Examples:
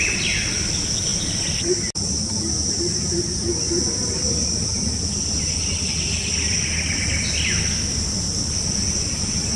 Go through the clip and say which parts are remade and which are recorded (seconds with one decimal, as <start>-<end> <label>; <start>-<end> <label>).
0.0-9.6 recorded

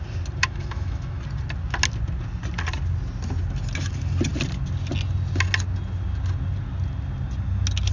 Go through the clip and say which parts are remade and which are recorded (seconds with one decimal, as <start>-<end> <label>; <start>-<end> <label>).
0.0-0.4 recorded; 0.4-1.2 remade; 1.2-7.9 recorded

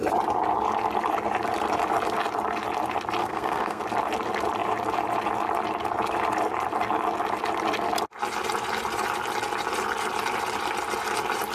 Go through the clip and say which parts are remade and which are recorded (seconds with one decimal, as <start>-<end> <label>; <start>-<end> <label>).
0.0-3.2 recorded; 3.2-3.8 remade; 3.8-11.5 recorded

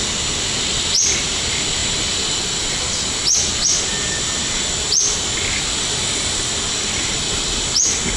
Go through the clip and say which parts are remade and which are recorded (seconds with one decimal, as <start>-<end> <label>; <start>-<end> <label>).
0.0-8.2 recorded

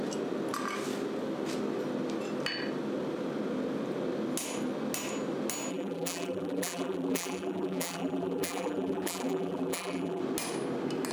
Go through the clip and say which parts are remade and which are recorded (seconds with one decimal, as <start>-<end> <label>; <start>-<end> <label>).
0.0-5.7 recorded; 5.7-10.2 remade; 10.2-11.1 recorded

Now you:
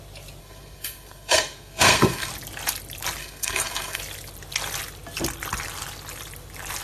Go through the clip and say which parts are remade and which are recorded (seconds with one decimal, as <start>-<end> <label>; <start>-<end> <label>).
0.0-0.4 recorded; 0.4-2.3 remade; 2.3-3.2 recorded; 3.2-4.0 remade; 4.0-6.8 recorded